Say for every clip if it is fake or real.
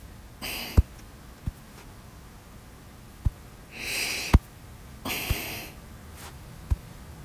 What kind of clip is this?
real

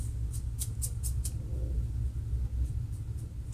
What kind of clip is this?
real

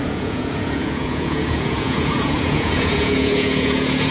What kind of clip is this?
fake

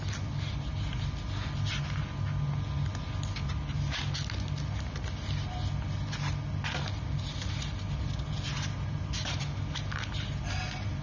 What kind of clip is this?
real